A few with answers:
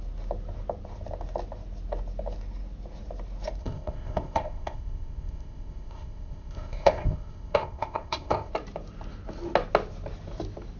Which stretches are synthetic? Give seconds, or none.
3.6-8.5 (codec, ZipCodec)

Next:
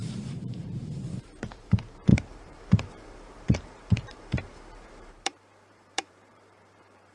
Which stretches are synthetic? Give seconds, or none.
0.0-7.1 (vocoder, BigVGAN v2)

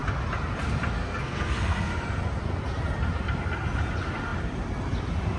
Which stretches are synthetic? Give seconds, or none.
1.0-1.9 (codec, SNAC)

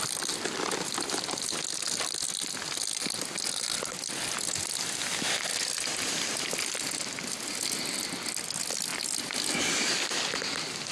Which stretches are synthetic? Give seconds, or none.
none

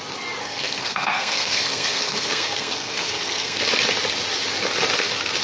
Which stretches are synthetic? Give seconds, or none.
0.4-3.6 (codec, SNAC)

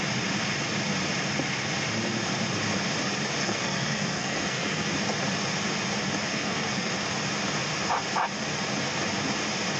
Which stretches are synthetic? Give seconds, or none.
3.4-4.9 (codec, SNAC); 6.3-6.9

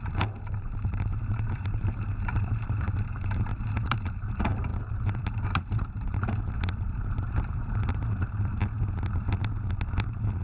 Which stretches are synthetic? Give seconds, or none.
0.0-8.6 (vocoder, BigVGAN v2)

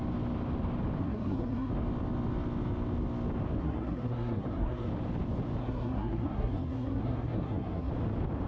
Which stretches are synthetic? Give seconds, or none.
1.0-1.7 (codec, SNAC); 3.6-4.9; 5.6-7.9